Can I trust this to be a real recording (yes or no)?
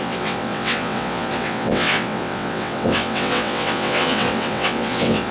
no